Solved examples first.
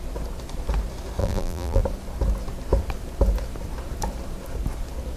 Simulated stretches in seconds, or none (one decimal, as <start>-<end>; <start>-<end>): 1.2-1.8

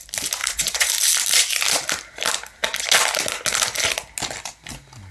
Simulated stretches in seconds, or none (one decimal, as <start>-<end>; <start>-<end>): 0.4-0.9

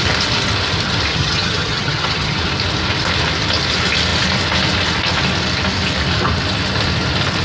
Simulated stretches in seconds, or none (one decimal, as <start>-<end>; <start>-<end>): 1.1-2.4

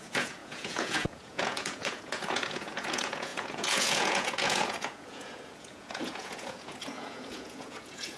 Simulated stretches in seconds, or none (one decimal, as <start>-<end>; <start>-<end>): 0.0-8.2

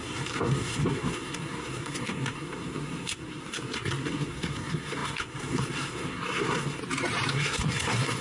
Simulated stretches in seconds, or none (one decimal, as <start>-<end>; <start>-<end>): 0.0-6.8; 7.3-8.2